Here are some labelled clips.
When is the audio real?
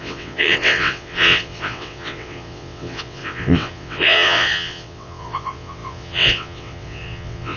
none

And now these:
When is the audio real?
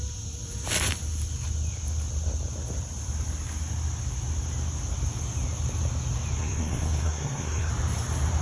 0.0-6.4; 7.7-8.4